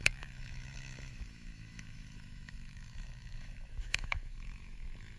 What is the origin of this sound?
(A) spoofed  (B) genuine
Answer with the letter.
A